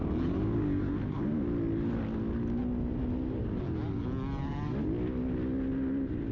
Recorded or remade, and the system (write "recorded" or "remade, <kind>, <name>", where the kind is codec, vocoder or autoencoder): recorded